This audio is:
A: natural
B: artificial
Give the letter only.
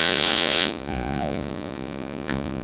B